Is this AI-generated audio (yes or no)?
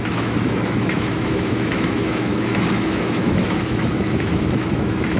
yes